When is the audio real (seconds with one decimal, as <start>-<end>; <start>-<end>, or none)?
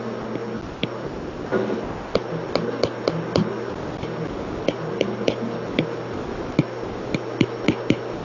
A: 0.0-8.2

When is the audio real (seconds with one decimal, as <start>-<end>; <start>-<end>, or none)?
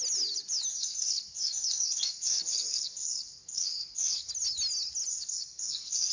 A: 0.0-0.7; 4.3-5.1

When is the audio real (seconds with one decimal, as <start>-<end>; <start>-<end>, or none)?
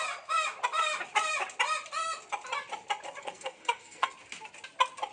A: 0.0-3.2; 4.1-5.1